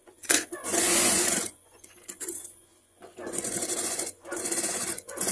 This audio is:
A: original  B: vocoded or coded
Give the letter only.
B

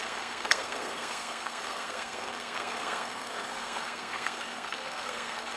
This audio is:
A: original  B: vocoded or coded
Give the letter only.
B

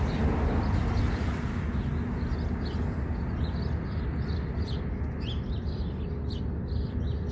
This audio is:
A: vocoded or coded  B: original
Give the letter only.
B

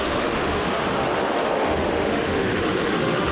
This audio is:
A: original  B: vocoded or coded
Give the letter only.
B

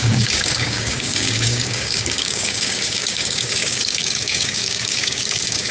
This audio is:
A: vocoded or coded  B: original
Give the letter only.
A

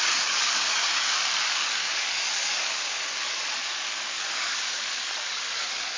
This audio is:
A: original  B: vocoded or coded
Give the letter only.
B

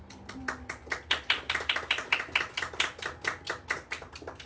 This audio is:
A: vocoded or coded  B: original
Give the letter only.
B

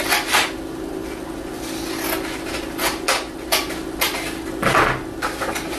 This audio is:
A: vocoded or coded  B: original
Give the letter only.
B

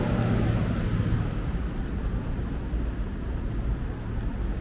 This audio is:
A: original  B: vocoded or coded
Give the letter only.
A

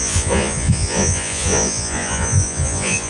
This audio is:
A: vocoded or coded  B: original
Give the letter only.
A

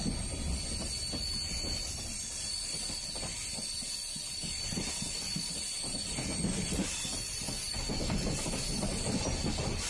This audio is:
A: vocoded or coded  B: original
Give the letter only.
B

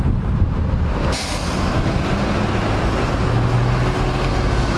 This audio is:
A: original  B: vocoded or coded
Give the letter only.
A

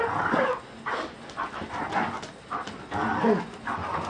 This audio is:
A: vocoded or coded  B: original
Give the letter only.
B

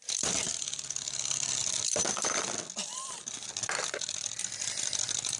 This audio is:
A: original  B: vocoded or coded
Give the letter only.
A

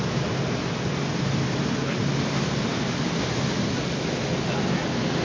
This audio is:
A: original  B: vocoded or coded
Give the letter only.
A